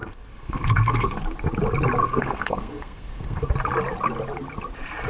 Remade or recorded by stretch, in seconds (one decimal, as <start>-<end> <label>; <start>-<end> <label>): 0.0-1.2 remade; 1.2-2.0 recorded; 2.0-3.5 remade; 3.5-5.1 recorded